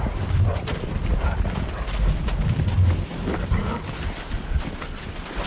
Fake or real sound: real